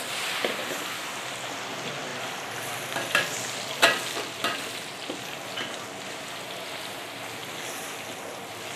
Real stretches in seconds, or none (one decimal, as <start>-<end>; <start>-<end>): 0.0-8.8